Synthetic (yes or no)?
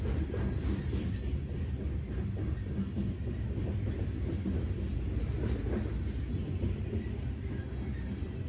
no